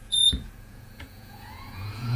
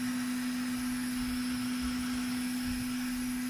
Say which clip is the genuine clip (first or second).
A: second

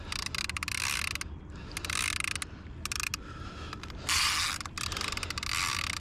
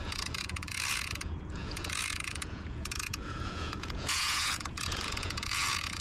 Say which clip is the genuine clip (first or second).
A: first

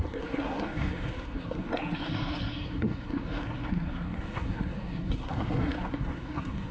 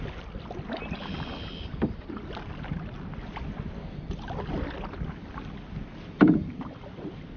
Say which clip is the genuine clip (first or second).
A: second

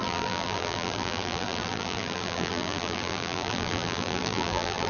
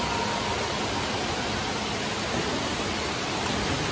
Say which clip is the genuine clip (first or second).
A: second